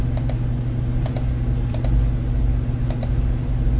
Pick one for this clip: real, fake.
real